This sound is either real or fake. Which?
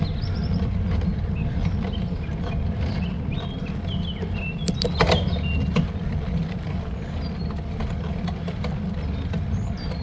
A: real